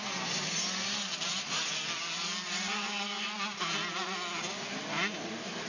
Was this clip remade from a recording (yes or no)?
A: no